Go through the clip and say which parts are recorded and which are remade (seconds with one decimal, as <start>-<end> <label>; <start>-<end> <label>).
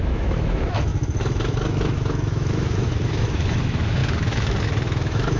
0.0-5.4 remade